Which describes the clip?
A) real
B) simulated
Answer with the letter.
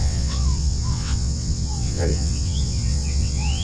B